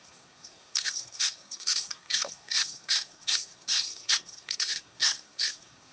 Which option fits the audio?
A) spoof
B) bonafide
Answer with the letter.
A